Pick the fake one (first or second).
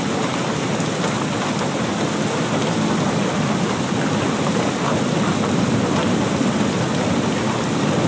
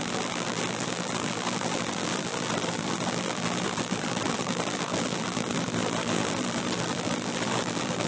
second